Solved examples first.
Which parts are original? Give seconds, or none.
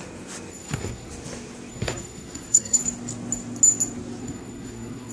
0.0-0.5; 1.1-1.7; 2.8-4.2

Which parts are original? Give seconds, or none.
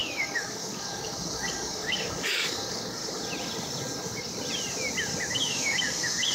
3.0-5.3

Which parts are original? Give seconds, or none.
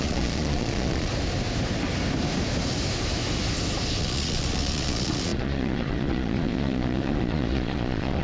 1.1-4.0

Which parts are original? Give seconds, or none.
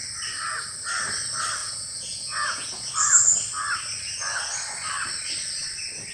0.0-1.6; 2.9-6.1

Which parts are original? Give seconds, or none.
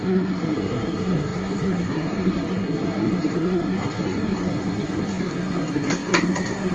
none